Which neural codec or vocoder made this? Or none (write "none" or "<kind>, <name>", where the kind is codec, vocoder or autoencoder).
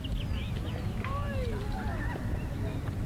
vocoder, BigVGAN v2